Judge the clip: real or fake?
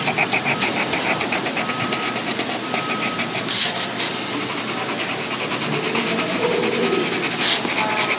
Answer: real